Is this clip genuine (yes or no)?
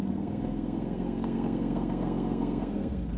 no